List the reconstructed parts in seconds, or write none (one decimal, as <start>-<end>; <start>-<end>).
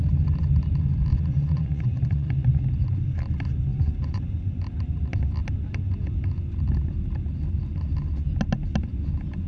1.1-2.6; 3.7-4.6